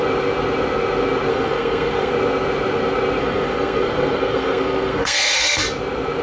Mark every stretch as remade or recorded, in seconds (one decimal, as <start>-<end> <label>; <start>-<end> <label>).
0.0-1.3 recorded; 1.3-2.1 remade; 2.1-3.2 recorded; 3.2-5.6 remade; 5.6-6.2 recorded